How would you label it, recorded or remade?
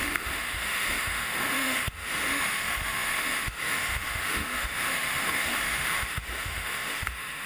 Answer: remade